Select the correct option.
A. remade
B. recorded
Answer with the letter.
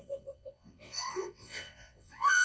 A